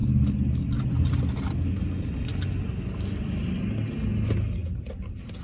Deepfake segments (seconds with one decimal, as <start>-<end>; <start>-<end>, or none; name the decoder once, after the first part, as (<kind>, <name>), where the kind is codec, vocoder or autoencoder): 4.6-5.4 (vocoder, BigVGAN v2)